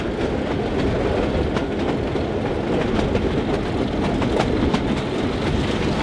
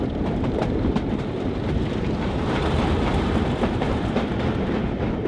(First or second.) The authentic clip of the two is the first